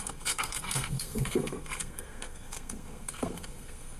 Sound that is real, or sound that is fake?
fake